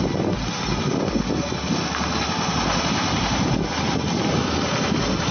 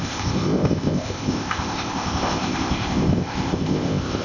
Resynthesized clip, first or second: second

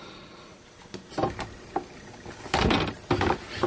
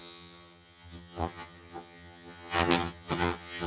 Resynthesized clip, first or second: second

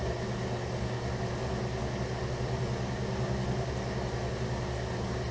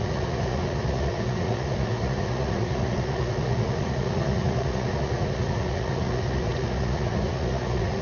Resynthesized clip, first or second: second